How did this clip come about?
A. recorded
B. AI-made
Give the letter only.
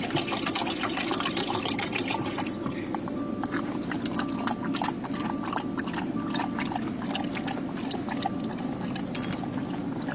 A